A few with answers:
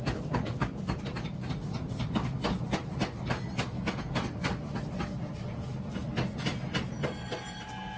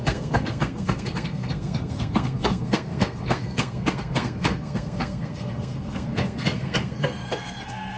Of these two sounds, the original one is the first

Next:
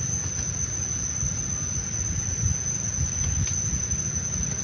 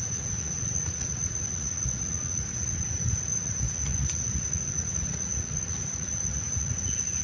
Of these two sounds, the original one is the first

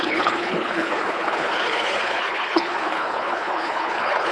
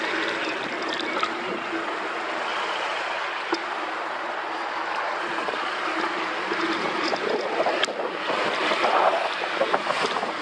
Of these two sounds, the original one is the second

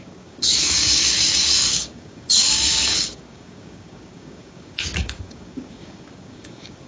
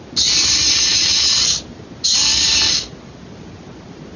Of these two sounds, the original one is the second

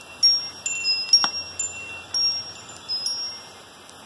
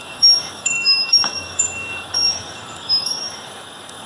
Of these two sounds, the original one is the first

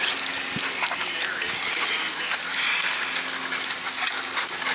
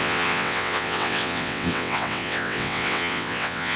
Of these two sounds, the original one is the first